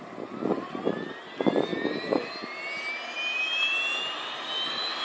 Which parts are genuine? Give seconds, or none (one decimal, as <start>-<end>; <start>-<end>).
0.0-5.0